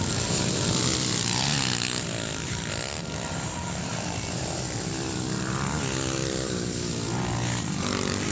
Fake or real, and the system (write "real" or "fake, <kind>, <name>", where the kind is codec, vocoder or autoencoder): real